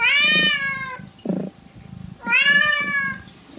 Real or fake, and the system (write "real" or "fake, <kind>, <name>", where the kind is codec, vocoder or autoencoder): real